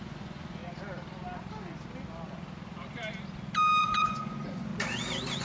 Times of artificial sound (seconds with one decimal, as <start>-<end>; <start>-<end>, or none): 0.0-0.6; 3.8-4.7